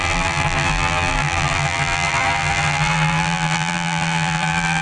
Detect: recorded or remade remade